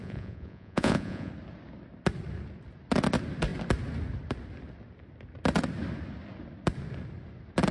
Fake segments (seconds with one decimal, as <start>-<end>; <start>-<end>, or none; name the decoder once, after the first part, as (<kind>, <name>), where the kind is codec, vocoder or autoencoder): 0.0-1.3 (vocoder, Vocos)